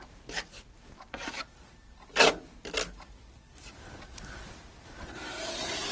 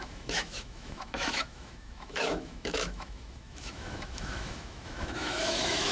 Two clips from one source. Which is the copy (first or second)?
second